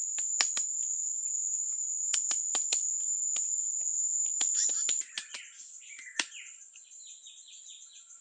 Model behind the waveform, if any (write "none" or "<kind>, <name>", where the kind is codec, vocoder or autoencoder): none